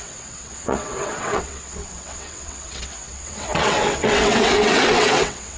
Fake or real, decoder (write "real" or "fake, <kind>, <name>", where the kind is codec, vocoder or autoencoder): fake, vocoder, WaveNeXt